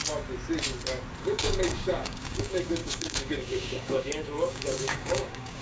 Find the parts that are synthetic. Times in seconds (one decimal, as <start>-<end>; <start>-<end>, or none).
1.2-5.6